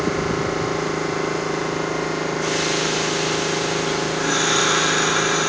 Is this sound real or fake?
real